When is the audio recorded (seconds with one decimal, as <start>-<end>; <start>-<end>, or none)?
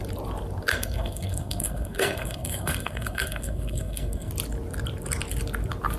0.0-0.7; 4.3-6.0